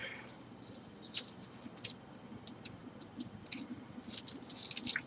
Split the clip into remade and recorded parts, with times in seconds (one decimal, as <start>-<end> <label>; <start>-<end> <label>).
0.0-5.1 recorded